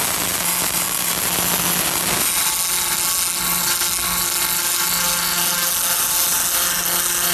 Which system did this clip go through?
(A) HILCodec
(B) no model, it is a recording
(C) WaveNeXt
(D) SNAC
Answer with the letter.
B